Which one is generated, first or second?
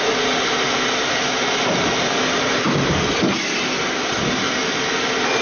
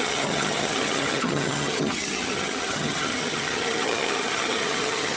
second